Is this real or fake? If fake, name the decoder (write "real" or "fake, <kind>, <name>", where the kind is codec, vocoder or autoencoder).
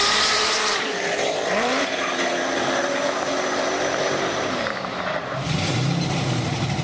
fake, vocoder, BigVGAN v2